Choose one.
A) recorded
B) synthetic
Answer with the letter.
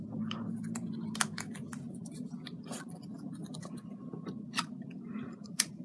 B